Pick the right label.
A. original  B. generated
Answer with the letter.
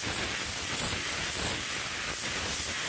A